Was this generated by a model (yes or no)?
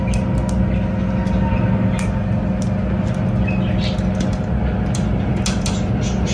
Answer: no